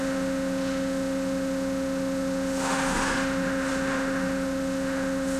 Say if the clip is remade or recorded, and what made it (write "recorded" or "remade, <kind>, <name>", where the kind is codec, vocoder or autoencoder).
remade, autoencoder, DAC-VAE